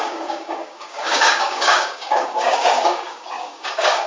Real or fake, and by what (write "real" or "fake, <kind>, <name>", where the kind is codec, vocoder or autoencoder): fake, codec, DAC